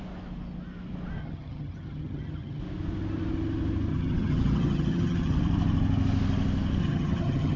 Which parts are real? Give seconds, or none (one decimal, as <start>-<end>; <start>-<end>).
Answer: 0.0-1.2; 2.6-3.9; 5.4-6.8